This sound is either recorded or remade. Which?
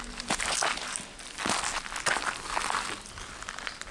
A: recorded